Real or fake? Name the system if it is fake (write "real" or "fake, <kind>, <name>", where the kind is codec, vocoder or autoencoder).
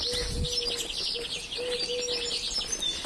real